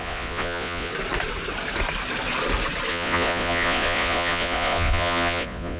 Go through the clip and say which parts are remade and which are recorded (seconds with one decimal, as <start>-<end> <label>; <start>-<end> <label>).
0.0-0.9 remade; 0.9-2.9 recorded; 2.9-5.8 remade